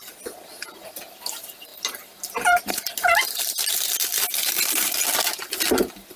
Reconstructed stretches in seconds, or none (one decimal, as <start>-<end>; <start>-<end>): 0.0-6.2